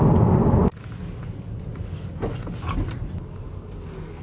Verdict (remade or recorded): recorded